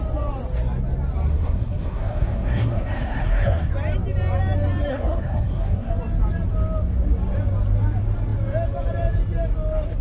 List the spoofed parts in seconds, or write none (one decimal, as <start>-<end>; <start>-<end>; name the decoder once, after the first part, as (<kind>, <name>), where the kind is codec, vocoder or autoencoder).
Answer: 1.3-3.7 (codec, SNAC); 4.9-5.9